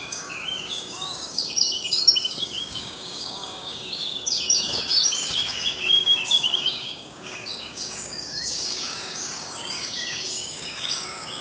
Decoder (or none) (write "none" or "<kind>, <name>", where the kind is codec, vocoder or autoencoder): codec, DAC